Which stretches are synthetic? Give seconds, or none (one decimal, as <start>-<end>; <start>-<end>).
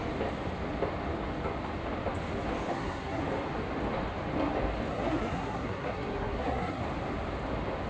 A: 2.7-3.2; 4.9-6.8